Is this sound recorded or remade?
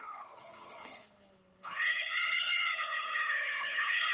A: remade